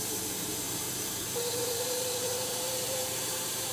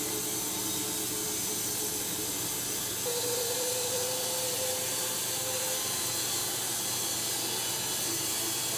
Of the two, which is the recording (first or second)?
second